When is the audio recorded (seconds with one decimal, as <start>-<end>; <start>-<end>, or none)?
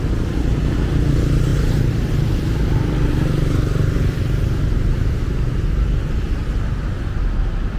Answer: 0.0-7.8